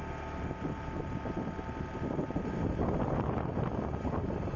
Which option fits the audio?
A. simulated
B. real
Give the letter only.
B